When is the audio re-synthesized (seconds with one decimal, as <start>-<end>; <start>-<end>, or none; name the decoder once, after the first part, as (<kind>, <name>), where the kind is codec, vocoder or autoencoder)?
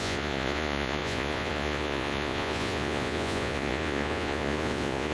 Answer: 0.0-5.1 (vocoder, Vocos)